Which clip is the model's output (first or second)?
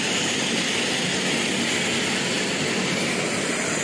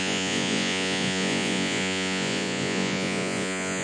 second